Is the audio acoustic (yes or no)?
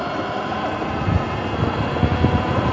yes